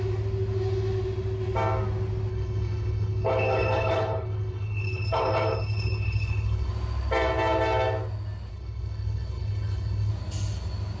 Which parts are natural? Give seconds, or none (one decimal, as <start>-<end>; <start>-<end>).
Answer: 0.0-2.3; 6.7-8.5; 10.1-11.0